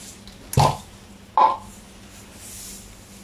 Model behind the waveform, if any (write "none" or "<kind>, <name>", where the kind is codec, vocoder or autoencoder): none